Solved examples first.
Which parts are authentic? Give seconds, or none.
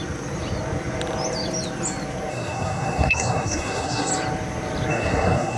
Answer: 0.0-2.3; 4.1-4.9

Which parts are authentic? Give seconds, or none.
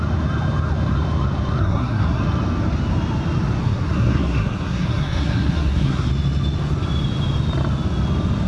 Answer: 0.0-1.6; 2.2-3.6; 6.1-8.5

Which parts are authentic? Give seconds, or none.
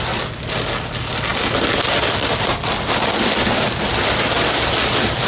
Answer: 0.0-5.3